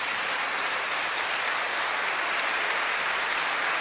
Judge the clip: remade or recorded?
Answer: recorded